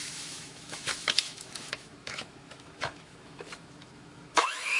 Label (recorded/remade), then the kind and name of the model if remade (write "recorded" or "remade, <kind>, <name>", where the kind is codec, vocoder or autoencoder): remade, autoencoder, DAC-VAE